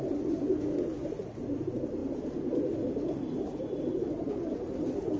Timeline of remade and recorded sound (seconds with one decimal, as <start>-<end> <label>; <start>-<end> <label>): 0.0-5.2 recorded